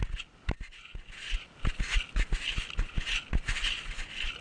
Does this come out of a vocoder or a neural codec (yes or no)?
no